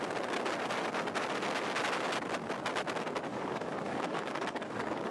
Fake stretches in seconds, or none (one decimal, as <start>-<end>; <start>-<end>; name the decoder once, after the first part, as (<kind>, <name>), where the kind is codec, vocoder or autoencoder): 3.3-5.1 (codec, DAC)